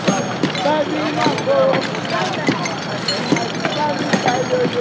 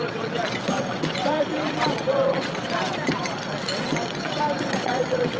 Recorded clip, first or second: first